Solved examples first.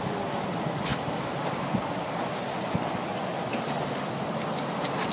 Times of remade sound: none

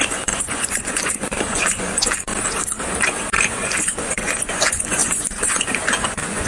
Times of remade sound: 0.0-2.3 (vocoder, Vocos); 3.5-6.5

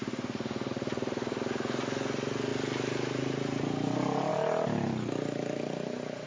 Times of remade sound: none

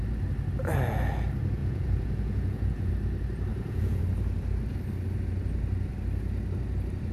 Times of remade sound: 1.6-2.9 (vocoder, Vocos); 3.5-4.0